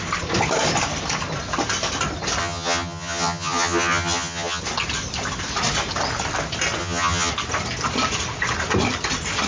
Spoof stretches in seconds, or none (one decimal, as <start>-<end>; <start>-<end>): 2.4-4.6; 6.8-7.3